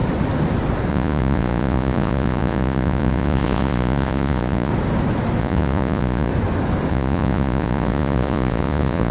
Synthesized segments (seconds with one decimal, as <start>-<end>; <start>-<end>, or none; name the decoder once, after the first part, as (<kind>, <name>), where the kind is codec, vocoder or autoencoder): 0.9-4.7 (vocoder, Vocos); 5.4-6.3; 6.9-9.1